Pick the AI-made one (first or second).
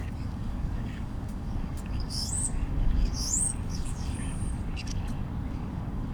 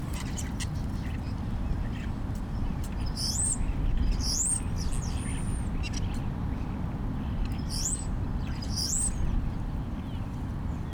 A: first